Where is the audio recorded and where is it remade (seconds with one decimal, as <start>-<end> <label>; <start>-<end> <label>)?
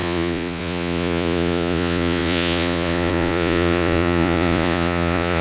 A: 0.0-5.4 remade